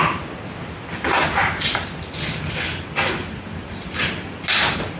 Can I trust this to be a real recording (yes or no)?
yes